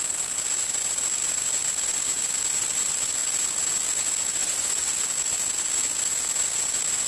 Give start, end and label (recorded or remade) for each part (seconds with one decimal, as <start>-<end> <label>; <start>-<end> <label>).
0.0-4.4 recorded; 4.4-4.9 remade; 4.9-7.1 recorded